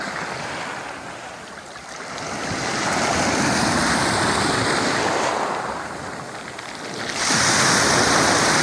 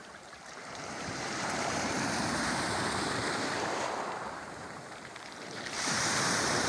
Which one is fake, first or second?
second